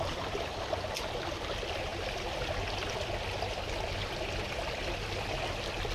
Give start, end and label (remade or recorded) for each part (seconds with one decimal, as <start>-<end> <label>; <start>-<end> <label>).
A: 0.0-5.9 recorded